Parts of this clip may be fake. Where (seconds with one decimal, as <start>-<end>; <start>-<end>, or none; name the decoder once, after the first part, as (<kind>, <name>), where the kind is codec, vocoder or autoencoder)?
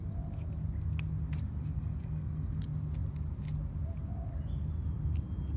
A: 1.6-2.6 (codec, SNAC)